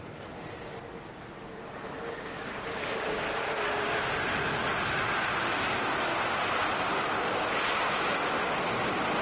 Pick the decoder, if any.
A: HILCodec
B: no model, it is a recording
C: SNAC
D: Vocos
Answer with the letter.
B